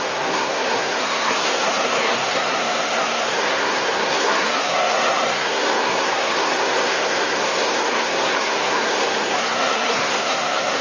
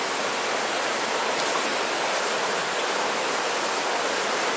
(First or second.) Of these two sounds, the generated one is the first